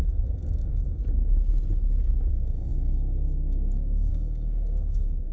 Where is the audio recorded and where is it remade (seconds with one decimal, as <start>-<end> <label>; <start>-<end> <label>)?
0.0-1.0 remade; 1.0-2.3 recorded; 2.3-5.3 remade